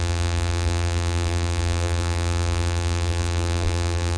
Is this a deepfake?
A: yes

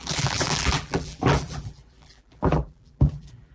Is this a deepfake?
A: yes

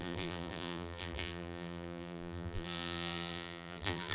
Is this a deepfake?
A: yes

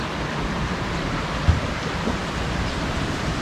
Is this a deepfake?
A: no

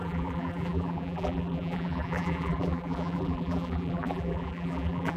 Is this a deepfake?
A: yes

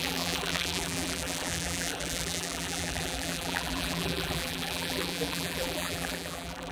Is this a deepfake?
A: yes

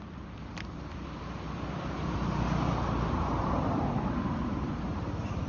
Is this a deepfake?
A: yes